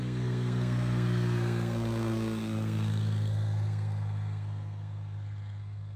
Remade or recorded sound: remade